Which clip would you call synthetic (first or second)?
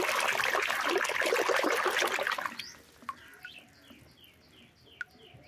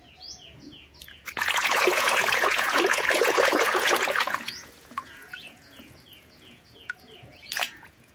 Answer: second